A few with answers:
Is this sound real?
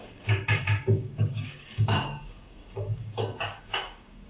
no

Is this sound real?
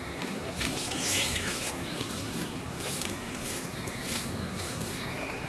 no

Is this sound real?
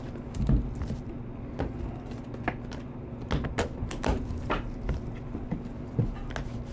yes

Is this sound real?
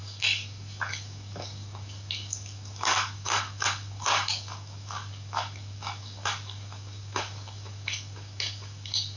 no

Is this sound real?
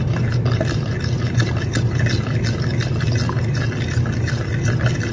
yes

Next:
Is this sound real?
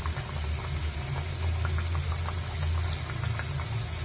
yes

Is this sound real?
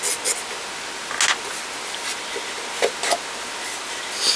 yes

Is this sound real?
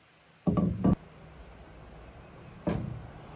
yes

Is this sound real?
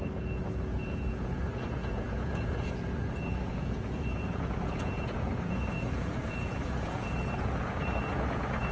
no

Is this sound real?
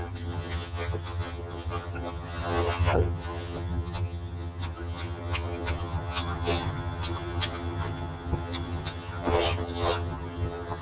no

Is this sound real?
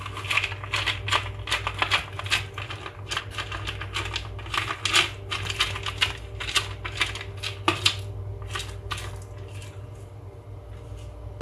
yes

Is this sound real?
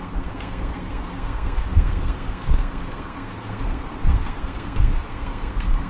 no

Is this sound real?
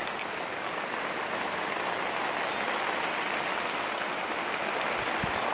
yes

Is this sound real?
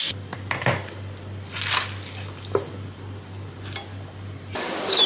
yes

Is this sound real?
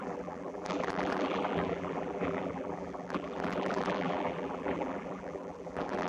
no